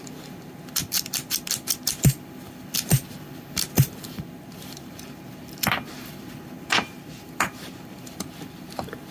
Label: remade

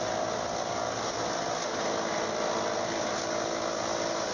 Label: recorded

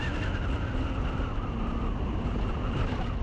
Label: recorded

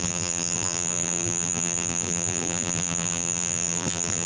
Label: remade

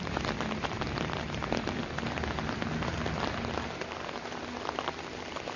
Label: recorded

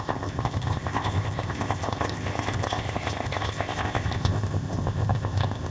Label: remade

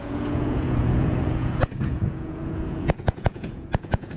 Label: remade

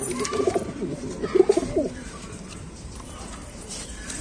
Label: remade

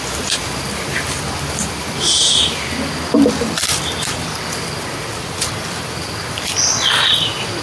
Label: remade